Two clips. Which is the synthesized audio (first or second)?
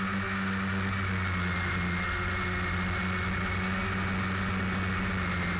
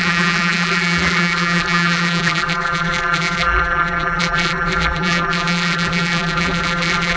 second